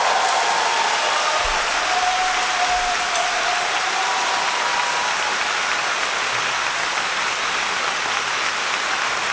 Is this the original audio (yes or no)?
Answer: yes